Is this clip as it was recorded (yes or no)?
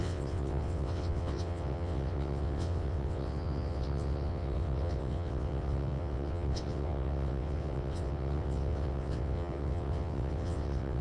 no